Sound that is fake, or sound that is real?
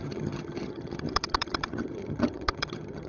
fake